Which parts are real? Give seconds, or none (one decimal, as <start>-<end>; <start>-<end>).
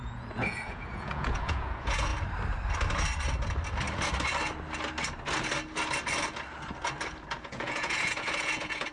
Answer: 2.1-7.3